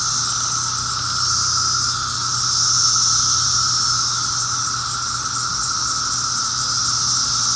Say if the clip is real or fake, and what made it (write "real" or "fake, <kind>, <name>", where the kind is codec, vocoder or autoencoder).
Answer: real